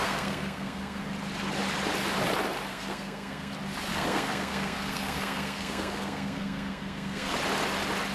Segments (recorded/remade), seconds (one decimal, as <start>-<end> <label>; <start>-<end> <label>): 0.0-1.0 remade; 1.0-2.7 recorded; 2.7-3.5 remade; 3.5-3.9 recorded; 3.9-7.3 remade; 7.3-8.1 recorded